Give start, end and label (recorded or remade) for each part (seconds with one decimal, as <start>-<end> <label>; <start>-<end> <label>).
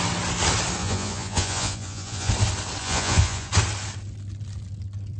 0.0-0.8 recorded; 0.8-2.3 remade; 2.3-2.8 recorded; 2.8-3.5 remade; 3.5-5.2 recorded